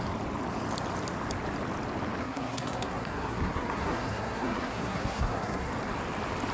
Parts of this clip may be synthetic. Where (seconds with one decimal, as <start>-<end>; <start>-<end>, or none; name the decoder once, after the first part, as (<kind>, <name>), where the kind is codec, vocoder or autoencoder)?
2.2-5.7 (codec, SNAC)